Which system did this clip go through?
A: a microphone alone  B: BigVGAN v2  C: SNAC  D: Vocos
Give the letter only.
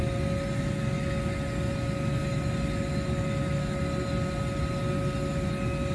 A